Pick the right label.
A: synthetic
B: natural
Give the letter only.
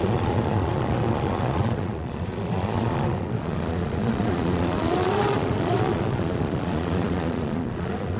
A